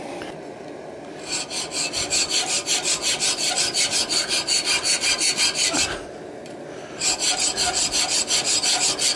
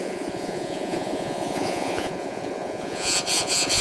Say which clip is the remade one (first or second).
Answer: second